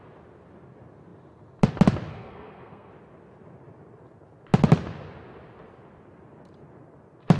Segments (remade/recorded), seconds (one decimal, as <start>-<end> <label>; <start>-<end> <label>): 0.0-2.1 recorded; 2.1-2.9 remade; 2.9-7.4 recorded